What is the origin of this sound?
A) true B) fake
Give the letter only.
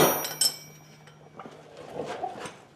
A